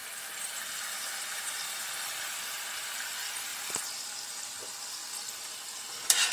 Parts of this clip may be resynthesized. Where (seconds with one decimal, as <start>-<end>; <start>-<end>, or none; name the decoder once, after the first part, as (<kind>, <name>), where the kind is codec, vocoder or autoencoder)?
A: 0.0-6.3 (vocoder, BigVGAN v2)

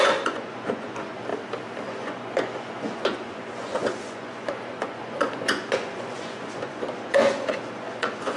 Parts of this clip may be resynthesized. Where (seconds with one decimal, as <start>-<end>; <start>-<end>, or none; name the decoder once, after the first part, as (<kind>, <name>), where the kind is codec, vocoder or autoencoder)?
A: 0.0-1.3 (vocoder, Vocos); 1.9-8.4

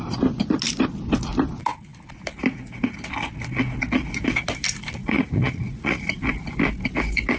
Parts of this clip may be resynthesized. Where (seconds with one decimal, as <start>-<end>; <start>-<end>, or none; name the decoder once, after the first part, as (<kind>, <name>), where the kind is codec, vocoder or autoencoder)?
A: 5.0-6.2 (vocoder, Vocos)

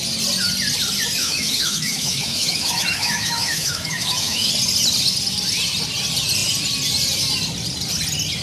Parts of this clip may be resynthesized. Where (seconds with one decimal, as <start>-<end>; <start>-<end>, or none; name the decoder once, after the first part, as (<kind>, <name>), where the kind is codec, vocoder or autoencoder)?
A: 1.2-4.5 (autoencoder, DAC-VAE)

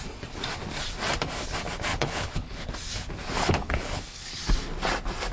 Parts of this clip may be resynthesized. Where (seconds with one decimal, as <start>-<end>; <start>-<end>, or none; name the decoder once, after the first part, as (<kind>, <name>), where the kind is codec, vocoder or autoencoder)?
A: 1.9-2.7 (codec, HILCodec); 3.4-4.4

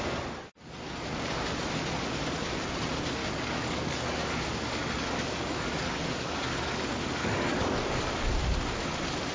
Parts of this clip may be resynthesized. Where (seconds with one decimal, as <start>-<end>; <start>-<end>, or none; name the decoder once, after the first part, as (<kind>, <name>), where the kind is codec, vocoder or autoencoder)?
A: 3.2-8.0 (codec, DAC)